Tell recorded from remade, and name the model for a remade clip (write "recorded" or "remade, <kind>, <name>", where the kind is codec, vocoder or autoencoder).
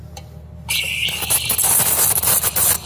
recorded